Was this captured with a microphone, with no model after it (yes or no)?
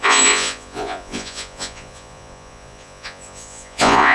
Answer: no